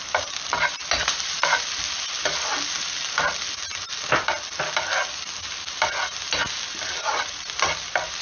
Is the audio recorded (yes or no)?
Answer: yes